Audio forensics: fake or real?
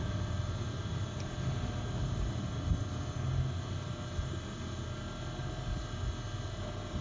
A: real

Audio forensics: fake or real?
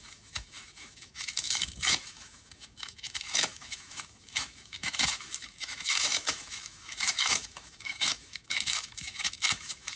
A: fake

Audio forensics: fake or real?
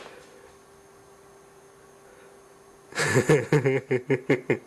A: real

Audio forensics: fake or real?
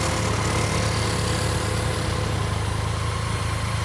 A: real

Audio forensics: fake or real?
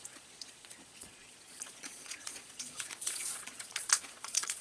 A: fake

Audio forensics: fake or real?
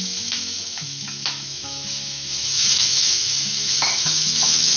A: fake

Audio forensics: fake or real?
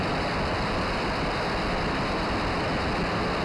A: real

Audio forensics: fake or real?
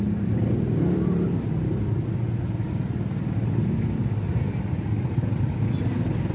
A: real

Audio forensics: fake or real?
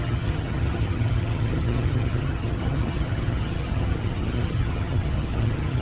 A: fake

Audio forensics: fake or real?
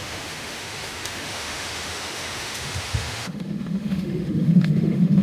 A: fake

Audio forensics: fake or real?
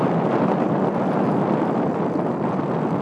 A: real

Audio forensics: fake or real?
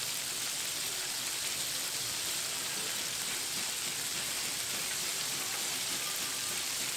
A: real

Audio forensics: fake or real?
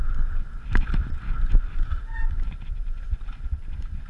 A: fake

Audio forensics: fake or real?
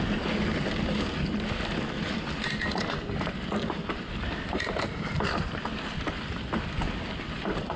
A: real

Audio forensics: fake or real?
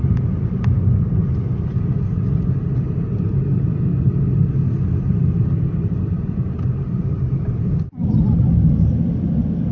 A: real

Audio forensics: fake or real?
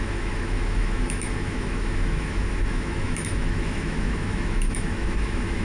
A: fake